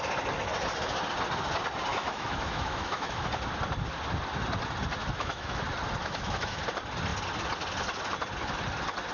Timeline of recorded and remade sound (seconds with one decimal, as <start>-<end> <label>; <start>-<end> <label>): 0.0-1.9 recorded; 1.9-3.3 remade; 3.3-5.0 recorded; 5.0-5.6 remade; 5.6-6.0 recorded; 6.0-6.6 remade; 6.6-9.1 recorded